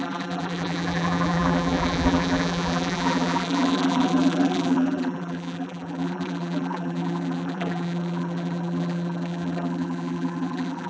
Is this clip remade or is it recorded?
remade